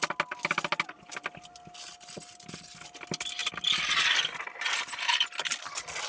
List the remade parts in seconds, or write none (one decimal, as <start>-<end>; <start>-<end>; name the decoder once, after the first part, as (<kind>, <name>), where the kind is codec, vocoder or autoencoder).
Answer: none